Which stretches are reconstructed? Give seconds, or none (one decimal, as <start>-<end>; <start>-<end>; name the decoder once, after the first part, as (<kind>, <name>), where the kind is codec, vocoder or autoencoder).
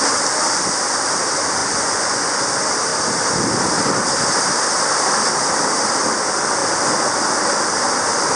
1.6-2.4 (vocoder, Vocos)